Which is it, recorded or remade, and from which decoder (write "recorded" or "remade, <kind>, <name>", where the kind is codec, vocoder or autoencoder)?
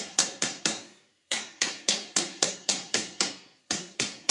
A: remade, codec, SNAC